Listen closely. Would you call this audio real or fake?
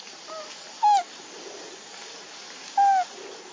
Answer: real